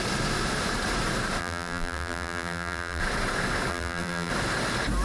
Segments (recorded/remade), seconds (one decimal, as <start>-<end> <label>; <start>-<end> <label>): 0.0-1.4 recorded; 1.4-3.0 remade; 3.0-3.7 recorded; 3.7-4.3 remade; 4.3-5.0 recorded